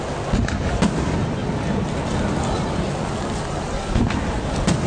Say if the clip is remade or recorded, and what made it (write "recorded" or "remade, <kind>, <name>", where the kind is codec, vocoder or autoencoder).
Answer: recorded